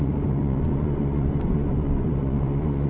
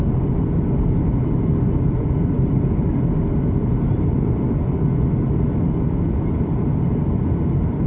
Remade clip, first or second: first